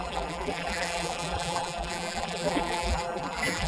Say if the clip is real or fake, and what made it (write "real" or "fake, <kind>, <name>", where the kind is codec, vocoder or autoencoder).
fake, vocoder, BigVGAN v2